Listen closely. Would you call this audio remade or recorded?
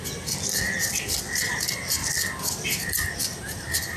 recorded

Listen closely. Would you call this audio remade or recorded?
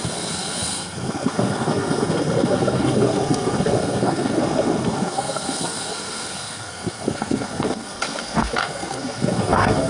remade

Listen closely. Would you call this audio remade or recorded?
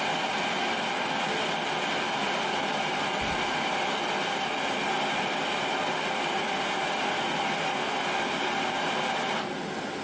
recorded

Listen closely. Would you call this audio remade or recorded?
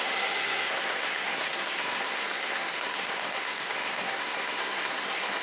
remade